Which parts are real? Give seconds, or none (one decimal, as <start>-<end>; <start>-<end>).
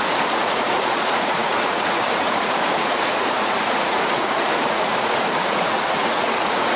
none